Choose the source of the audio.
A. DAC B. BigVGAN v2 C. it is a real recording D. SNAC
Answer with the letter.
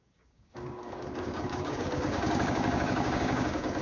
A